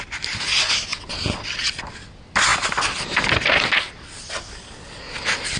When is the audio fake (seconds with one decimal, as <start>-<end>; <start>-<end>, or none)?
none